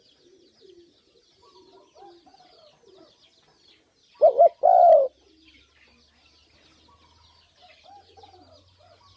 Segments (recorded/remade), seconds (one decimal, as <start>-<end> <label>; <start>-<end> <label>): 0.0-9.2 recorded